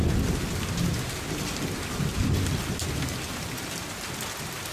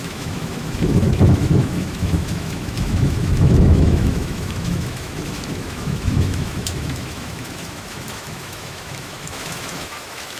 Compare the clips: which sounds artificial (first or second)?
second